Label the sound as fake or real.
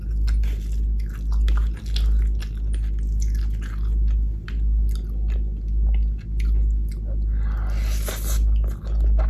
real